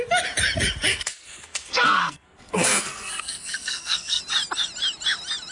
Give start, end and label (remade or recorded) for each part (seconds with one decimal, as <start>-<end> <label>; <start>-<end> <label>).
0.0-0.9 recorded; 0.9-4.2 remade; 4.2-5.5 recorded